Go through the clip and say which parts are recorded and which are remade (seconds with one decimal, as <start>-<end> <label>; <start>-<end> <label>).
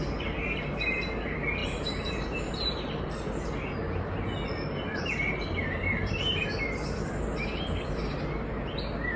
0.0-1.6 recorded; 1.6-2.8 remade; 2.8-5.6 recorded; 5.6-6.4 remade; 6.4-9.2 recorded